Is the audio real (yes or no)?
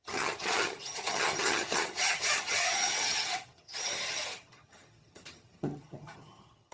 no